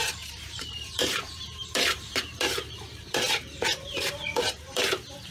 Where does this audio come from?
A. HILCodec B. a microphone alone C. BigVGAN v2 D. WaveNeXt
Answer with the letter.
C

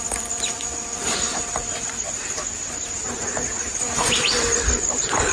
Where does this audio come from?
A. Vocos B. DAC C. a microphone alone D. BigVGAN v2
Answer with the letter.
C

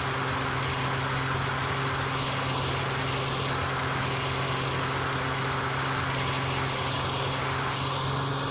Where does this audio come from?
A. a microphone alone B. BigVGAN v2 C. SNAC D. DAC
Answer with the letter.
A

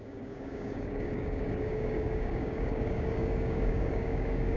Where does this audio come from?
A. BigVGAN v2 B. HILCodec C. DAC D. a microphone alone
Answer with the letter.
C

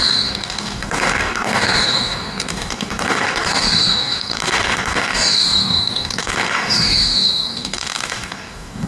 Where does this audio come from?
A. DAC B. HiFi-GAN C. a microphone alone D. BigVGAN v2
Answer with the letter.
A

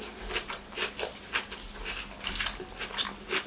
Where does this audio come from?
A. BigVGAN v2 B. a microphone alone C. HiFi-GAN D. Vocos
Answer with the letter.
B